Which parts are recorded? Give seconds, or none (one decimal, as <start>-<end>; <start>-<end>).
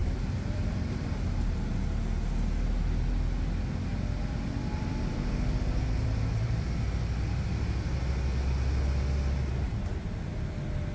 1.0-3.9; 7.4-10.9